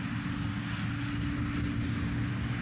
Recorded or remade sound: recorded